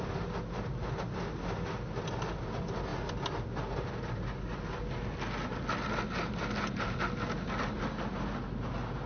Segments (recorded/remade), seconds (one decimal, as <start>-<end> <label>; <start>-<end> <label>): 0.0-9.1 recorded